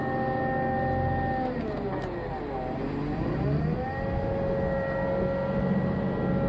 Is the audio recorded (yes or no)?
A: yes